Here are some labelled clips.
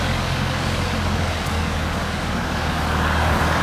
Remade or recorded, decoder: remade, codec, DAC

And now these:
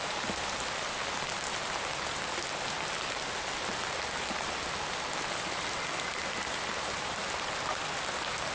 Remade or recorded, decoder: recorded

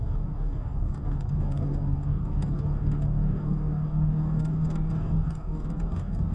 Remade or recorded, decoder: remade, codec, DAC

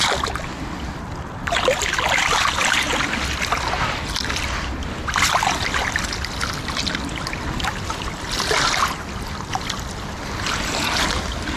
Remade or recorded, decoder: recorded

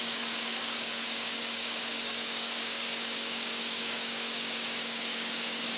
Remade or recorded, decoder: remade, codec, DAC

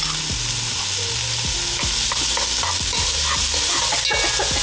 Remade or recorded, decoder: recorded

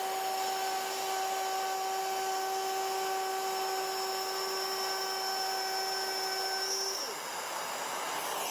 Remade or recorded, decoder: recorded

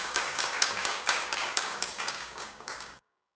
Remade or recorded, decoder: remade, codec, DAC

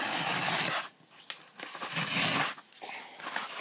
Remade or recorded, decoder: recorded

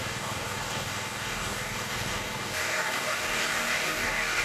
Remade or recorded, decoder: remade, codec, DAC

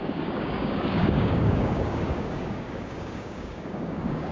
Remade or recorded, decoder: remade, codec, DAC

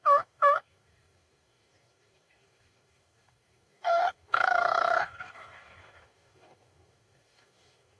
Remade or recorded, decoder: remade, codec, DAC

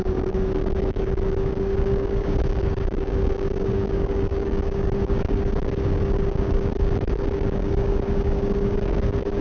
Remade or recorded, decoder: remade, codec, DAC